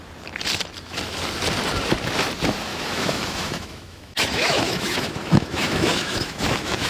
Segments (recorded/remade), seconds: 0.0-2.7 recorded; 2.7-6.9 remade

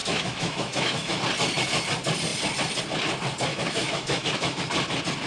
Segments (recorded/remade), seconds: 0.0-1.2 remade; 1.2-3.5 recorded; 3.5-4.6 remade; 4.6-5.3 recorded

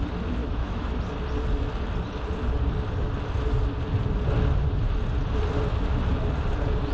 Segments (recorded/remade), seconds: 0.0-0.4 recorded; 0.4-1.0 remade; 1.0-6.9 recorded

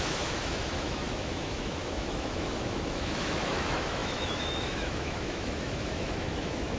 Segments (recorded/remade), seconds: 0.0-6.8 remade

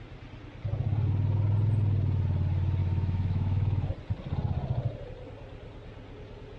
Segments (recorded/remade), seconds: 0.0-2.8 recorded; 2.8-3.9 remade; 3.9-6.6 recorded

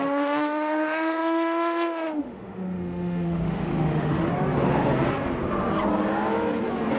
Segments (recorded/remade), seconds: 0.0-4.3 remade; 4.3-7.0 recorded